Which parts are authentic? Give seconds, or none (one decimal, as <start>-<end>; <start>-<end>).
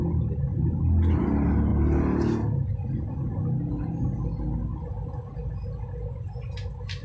0.0-7.0